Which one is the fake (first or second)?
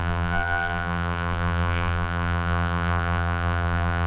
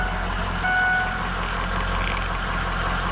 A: first